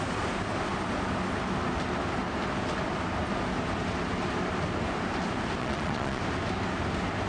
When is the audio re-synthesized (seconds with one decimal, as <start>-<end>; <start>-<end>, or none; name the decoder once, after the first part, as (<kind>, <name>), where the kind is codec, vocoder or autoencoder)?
5.6-6.2 (vocoder, Vocos)